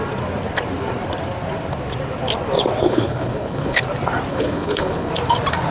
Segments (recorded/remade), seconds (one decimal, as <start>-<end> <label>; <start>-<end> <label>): 0.0-2.8 recorded; 2.8-3.8 remade; 3.8-4.3 recorded; 4.3-5.1 remade; 5.1-5.7 recorded